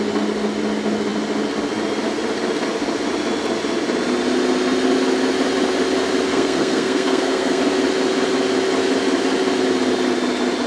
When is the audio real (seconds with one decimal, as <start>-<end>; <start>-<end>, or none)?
0.0-6.3; 7.6-10.7